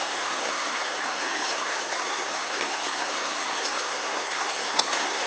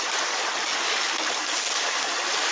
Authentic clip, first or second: second